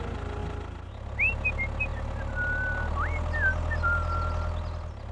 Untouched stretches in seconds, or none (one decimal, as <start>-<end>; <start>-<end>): 0.0-5.1